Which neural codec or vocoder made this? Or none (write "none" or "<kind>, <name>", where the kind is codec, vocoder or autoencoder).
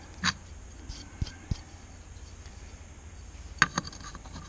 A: none